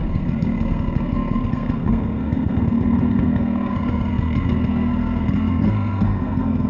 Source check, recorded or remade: remade